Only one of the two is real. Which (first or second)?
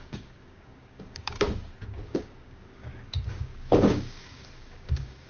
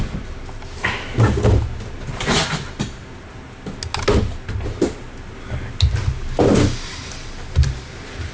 second